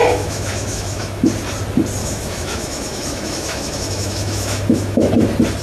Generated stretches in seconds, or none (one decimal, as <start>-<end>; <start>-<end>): 0.0-1.3; 2.0-5.1